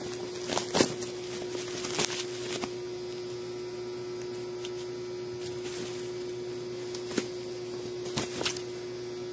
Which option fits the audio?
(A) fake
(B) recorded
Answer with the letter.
B